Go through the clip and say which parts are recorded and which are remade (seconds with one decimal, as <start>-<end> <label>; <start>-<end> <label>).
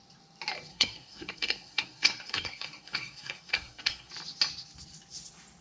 0.0-0.7 recorded; 0.7-4.1 remade; 4.1-5.6 recorded